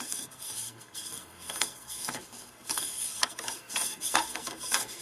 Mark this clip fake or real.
fake